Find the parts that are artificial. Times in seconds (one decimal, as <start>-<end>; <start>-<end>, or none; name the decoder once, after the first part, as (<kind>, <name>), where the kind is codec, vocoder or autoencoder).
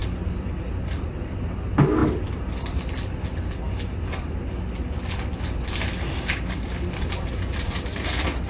none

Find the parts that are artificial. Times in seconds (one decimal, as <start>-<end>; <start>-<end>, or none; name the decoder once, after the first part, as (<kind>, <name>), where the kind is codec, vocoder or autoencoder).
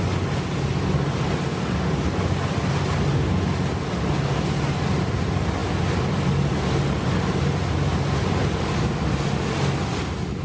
none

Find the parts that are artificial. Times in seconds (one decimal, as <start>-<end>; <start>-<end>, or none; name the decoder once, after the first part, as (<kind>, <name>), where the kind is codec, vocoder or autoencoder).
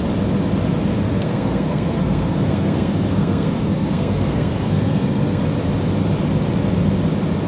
0.9-5.4 (codec, SNAC)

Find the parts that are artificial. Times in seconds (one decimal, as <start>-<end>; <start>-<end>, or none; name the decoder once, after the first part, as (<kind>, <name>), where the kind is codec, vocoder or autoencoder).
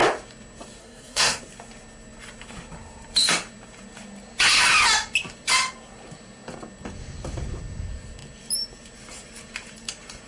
0.8-1.4 (codec, SNAC)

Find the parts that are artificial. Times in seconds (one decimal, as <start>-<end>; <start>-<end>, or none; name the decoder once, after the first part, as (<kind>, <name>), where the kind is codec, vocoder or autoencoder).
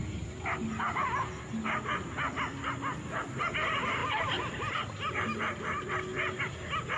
none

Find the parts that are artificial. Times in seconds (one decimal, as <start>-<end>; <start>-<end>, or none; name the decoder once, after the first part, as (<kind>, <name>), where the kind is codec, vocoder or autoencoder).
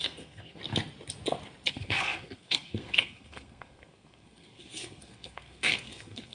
0.0-0.6 (codec, SNAC); 1.7-6.3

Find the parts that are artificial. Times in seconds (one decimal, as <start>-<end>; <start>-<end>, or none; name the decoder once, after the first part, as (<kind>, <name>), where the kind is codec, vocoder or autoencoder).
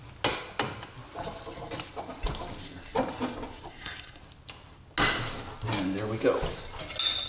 3.7-4.2 (codec, SNAC)